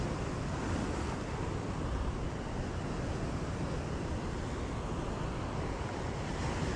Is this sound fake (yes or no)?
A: no